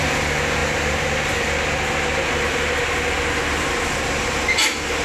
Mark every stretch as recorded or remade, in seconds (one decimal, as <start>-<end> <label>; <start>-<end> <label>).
0.0-5.0 recorded